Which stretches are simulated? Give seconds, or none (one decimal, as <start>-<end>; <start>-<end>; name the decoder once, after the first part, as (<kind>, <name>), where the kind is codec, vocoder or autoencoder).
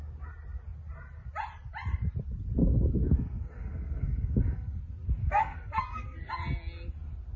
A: 2.6-4.8 (codec, SNAC); 5.2-6.3